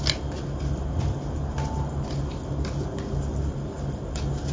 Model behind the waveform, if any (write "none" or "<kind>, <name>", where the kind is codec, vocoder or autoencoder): none